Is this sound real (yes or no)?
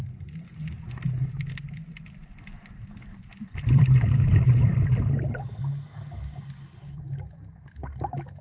yes